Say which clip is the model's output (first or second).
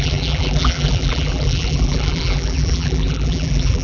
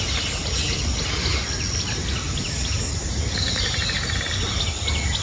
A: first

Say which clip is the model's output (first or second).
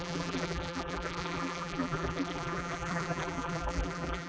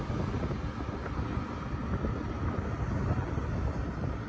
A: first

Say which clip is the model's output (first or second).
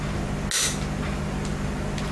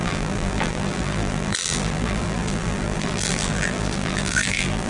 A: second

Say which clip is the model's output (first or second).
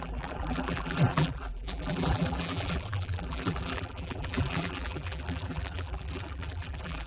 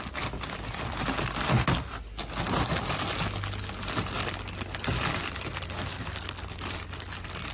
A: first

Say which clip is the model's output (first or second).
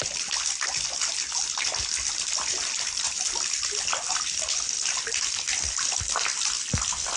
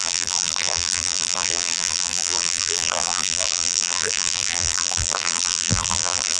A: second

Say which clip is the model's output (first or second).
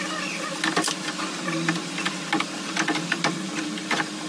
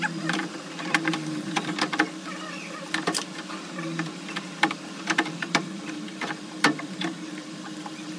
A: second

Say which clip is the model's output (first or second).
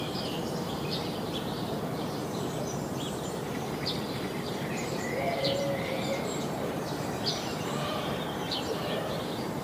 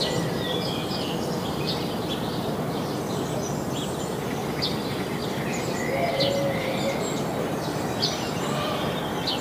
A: first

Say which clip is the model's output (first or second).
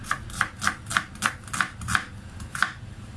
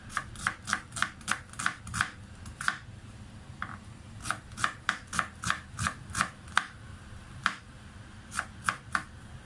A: second